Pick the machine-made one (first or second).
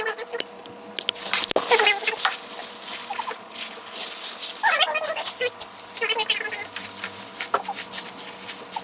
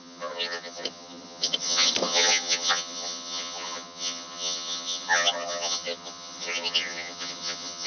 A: second